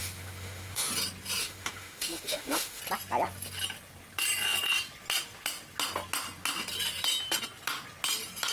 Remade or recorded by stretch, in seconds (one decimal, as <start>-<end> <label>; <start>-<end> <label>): 0.0-0.9 remade; 0.9-1.4 recorded; 1.4-2.8 remade; 2.8-8.5 recorded